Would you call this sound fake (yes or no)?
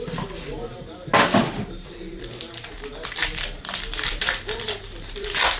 yes